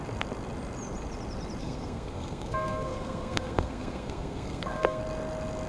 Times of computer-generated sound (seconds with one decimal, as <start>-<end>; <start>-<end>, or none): 1.6-5.0